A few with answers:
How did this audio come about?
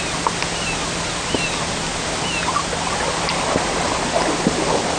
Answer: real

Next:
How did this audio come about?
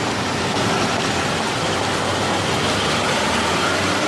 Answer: real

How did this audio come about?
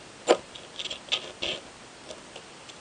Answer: real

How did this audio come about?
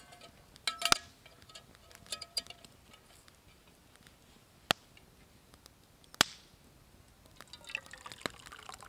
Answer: real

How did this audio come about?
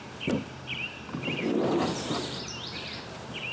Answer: fake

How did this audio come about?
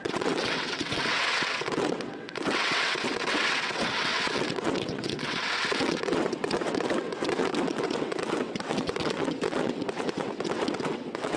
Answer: fake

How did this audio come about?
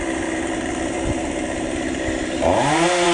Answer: fake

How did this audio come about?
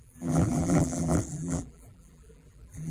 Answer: fake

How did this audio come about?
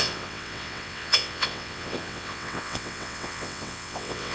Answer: fake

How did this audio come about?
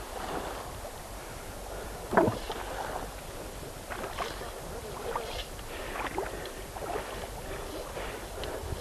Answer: real